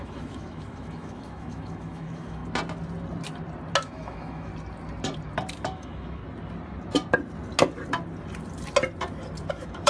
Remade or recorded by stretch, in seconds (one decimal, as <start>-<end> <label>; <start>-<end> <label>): 0.0-2.4 remade; 2.4-3.9 recorded; 3.9-4.5 remade; 4.5-5.7 recorded; 5.7-6.2 remade; 6.2-9.5 recorded; 9.5-9.9 remade